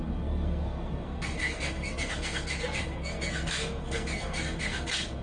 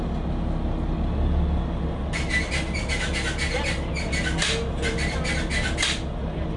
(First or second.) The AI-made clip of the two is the first